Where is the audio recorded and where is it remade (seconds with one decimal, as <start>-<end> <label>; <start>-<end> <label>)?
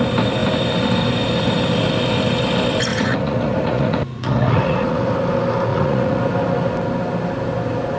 0.0-2.9 recorded; 2.9-5.1 remade; 5.1-5.7 recorded; 5.7-6.2 remade; 6.2-8.0 recorded